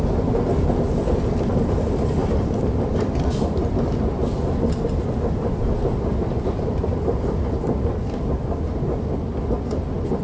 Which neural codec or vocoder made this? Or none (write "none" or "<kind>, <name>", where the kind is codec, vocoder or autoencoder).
none